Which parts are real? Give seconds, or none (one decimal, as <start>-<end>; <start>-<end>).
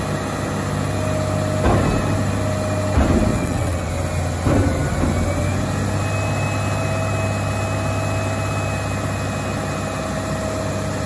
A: 0.0-3.3; 3.9-11.1